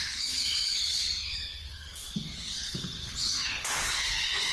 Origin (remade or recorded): remade